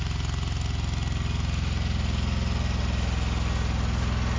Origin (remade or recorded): recorded